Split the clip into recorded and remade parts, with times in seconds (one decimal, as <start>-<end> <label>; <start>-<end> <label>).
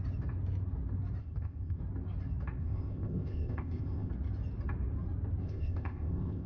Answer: 0.0-1.2 recorded; 1.2-1.8 remade; 1.8-2.6 recorded; 2.6-4.1 remade; 4.1-5.4 recorded; 5.4-6.5 remade